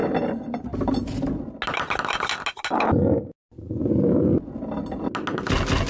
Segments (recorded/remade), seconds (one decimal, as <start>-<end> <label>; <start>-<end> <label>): 0.0-5.9 recorded

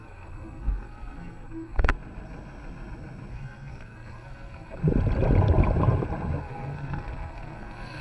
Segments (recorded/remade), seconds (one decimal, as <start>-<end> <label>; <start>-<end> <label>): 0.0-1.9 remade; 1.9-3.3 recorded; 3.3-4.8 remade; 4.8-6.4 recorded; 6.4-8.0 remade